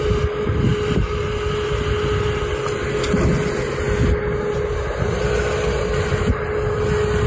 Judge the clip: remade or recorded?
recorded